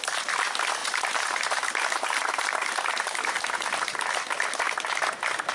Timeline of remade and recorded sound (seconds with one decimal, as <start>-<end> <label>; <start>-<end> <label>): 0.0-0.8 recorded; 0.8-3.3 remade; 3.3-5.5 recorded